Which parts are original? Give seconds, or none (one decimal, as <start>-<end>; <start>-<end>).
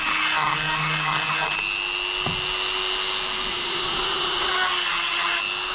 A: 0.0-3.5; 4.5-5.7